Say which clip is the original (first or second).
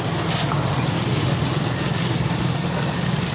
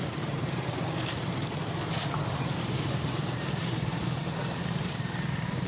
first